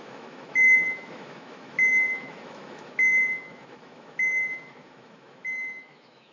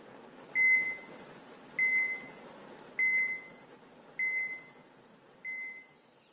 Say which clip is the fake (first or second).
first